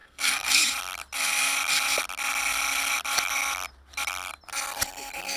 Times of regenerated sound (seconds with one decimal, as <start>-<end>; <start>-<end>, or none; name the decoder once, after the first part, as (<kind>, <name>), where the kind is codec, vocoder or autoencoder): 0.0-0.6 (codec, SNAC)